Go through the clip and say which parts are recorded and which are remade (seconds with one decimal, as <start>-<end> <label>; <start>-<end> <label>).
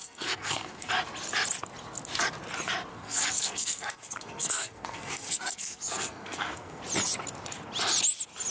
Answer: 0.0-0.9 remade; 0.9-2.9 recorded; 2.9-6.8 remade; 6.8-8.5 recorded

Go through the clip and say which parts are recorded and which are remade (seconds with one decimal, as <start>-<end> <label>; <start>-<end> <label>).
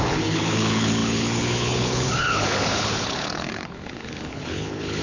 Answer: 0.0-5.0 remade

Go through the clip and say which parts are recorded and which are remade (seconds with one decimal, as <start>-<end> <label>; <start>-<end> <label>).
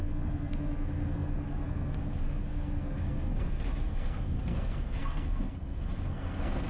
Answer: 0.0-6.7 remade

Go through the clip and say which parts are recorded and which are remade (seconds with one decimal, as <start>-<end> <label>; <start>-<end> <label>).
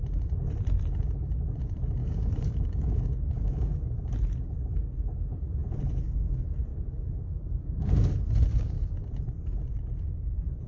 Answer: 0.0-2.0 recorded; 2.0-4.0 remade; 4.0-6.7 recorded; 6.7-8.1 remade; 8.1-8.5 recorded; 8.5-9.1 remade; 9.1-10.7 recorded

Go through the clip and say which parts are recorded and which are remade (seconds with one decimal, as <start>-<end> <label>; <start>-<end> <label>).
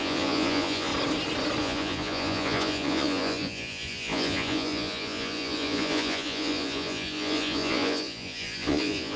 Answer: 0.0-0.9 remade; 0.9-1.6 recorded; 1.6-9.2 remade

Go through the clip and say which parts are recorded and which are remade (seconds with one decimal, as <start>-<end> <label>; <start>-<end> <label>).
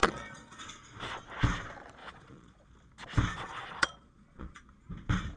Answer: 0.0-0.6 remade; 0.6-2.0 recorded; 2.0-2.7 remade; 2.7-3.3 recorded; 3.3-4.6 remade; 4.6-5.4 recorded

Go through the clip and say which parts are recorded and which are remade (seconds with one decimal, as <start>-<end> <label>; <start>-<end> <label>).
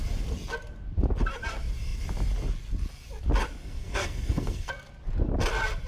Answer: 0.0-3.6 recorded; 3.6-4.7 remade; 4.7-5.9 recorded